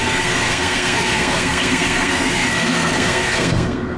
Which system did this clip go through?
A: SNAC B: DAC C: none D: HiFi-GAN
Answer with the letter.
A